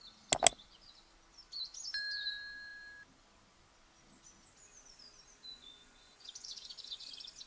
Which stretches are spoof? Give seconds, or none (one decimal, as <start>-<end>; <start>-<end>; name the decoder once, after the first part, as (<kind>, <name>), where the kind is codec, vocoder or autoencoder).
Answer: 5.5-7.1 (vocoder, Vocos)